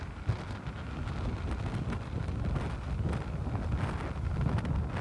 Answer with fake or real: real